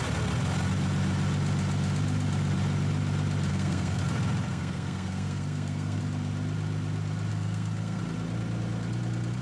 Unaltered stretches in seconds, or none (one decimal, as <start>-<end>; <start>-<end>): 0.0-3.5; 4.0-4.5; 6.0-7.3; 8.0-9.4